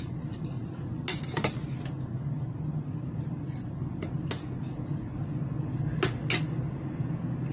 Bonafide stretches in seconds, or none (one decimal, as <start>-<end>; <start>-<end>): 0.0-2.6; 3.4-7.5